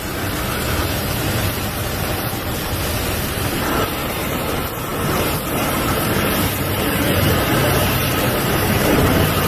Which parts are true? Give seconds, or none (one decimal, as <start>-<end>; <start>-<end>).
none

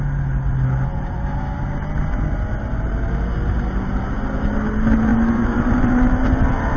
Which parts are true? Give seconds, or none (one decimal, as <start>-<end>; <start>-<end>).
0.0-6.8

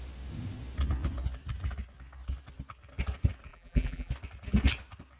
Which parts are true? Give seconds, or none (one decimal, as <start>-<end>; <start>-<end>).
0.0-3.5; 4.1-5.2

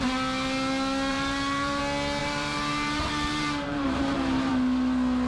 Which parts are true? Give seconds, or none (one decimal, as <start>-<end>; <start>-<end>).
0.0-1.1; 1.8-2.2; 4.5-5.3

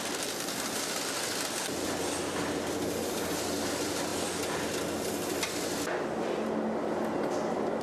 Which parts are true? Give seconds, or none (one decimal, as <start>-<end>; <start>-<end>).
0.0-7.8

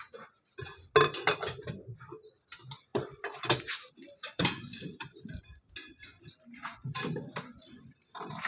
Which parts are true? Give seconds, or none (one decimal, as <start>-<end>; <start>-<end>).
0.0-2.9; 5.2-8.5

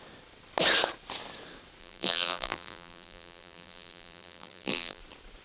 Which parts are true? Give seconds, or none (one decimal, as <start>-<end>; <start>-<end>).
0.0-1.8; 5.0-5.4

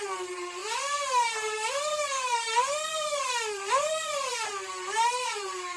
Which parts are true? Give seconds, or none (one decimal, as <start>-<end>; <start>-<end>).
none